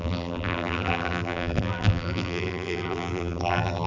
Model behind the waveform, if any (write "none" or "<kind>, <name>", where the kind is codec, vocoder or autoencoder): vocoder, BigVGAN v2